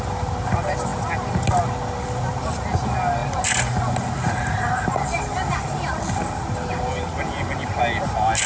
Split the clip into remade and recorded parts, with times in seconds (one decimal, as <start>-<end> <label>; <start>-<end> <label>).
0.0-8.5 recorded